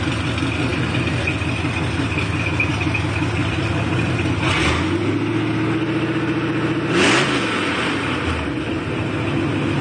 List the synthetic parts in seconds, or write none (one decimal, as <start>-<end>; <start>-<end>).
3.4-4.1